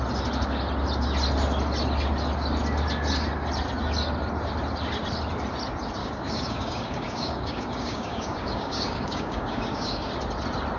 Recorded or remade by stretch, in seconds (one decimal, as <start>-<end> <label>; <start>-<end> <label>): 0.0-6.0 recorded; 6.0-10.1 remade; 10.1-10.8 recorded